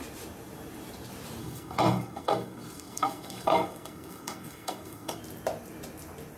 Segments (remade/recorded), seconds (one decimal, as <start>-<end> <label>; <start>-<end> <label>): 0.0-1.4 recorded; 1.4-5.2 remade; 5.2-6.4 recorded